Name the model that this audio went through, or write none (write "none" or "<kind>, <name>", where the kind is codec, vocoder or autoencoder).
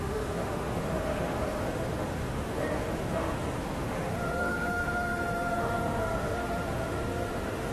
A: autoencoder, DAC-VAE